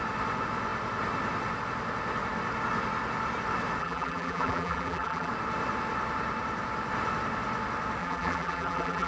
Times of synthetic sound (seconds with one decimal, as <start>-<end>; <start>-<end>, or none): 3.8-5.3; 8.0-9.1